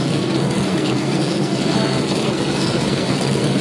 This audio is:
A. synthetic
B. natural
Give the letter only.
A